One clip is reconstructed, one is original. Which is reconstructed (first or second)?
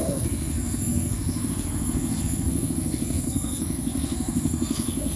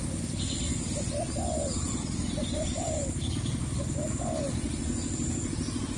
first